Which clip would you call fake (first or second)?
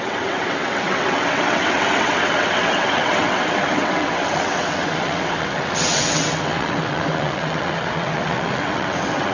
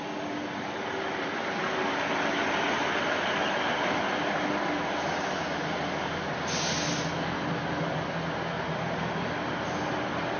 first